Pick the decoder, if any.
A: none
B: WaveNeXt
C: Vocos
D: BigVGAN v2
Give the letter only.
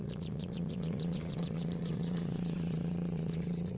C